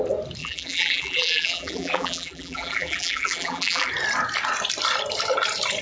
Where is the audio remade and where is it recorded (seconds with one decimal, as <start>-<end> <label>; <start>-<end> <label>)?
0.0-0.4 recorded; 0.4-3.9 remade; 3.9-5.8 recorded